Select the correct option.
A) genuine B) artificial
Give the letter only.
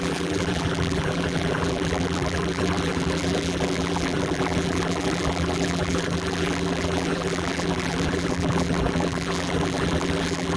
B